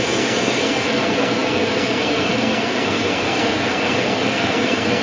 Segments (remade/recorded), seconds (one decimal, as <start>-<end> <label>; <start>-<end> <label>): 0.0-5.0 remade